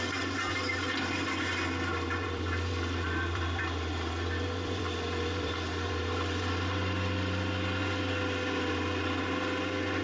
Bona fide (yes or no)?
no